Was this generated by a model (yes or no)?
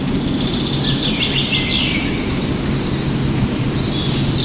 no